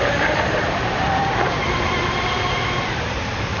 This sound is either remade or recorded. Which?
remade